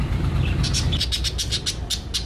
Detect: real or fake real